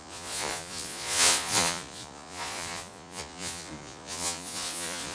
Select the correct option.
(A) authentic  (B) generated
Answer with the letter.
B